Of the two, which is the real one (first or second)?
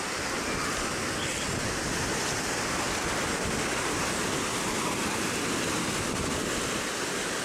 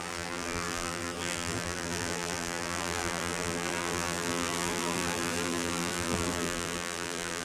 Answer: first